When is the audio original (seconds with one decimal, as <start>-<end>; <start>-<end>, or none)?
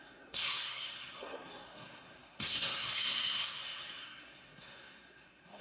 none